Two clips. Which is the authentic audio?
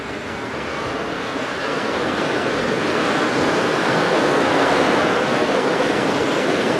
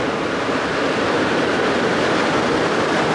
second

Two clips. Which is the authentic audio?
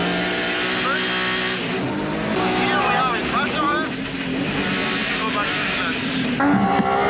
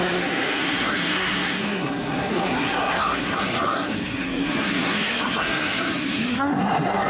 first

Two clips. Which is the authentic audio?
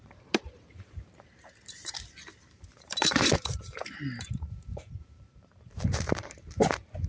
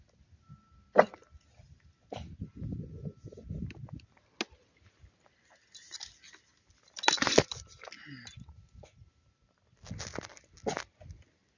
second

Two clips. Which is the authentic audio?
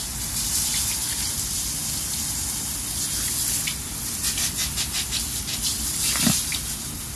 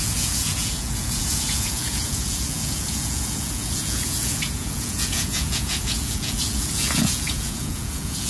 first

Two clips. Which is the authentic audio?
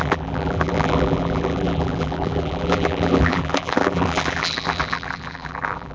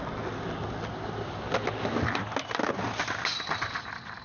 second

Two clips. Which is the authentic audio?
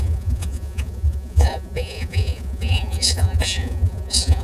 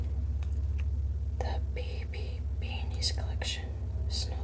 second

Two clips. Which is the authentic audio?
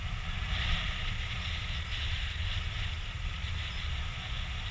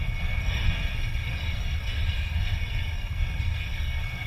first